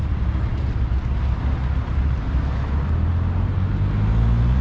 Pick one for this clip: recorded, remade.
recorded